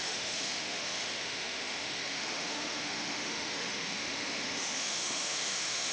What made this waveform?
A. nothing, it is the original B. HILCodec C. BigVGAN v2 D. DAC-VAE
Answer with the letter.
D